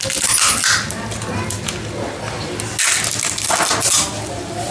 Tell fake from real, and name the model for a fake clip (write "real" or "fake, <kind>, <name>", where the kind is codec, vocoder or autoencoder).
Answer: real